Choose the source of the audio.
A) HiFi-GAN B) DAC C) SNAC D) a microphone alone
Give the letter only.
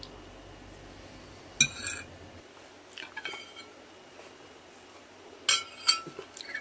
D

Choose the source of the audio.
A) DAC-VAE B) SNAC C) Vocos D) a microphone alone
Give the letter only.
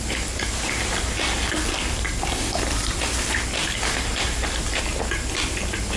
D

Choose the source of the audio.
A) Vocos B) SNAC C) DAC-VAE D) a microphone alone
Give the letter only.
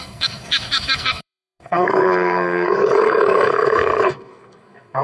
B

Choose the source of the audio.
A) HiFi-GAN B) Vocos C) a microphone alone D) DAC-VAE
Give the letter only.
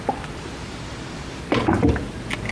C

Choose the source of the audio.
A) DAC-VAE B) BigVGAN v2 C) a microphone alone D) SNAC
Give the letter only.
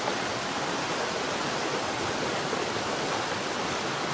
C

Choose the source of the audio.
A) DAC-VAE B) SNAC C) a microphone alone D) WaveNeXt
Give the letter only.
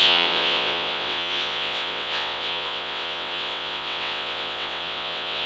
D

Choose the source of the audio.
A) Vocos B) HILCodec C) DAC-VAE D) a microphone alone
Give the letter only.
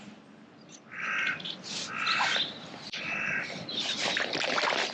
D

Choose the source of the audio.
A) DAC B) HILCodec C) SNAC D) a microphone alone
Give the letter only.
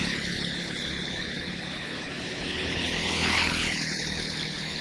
B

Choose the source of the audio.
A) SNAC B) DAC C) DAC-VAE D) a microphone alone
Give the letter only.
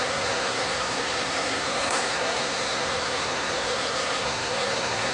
A